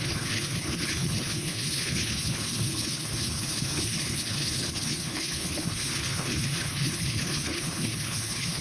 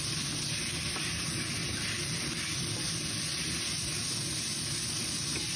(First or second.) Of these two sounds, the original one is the second